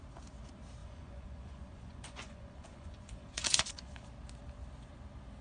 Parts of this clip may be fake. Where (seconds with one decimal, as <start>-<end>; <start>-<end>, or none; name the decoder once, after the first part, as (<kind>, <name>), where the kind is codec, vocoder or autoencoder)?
0.8-4.0 (vocoder, Vocos)